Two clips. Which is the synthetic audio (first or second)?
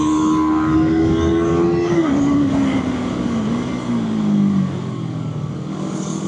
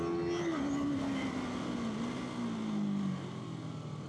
first